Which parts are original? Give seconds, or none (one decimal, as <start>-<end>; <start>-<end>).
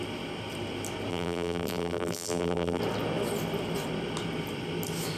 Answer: 0.0-1.1; 2.8-5.2